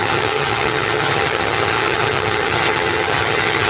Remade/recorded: remade